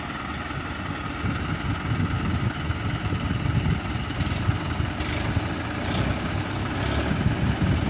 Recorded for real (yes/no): yes